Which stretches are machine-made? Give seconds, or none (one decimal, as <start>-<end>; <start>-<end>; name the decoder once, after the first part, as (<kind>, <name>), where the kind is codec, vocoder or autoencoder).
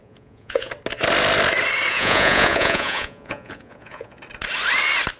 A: 0.0-0.7 (vocoder, Vocos); 1.9-4.2